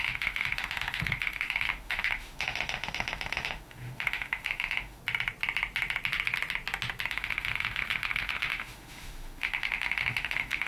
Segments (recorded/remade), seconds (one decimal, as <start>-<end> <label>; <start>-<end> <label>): 0.0-5.0 remade; 5.0-7.1 recorded; 7.1-10.7 remade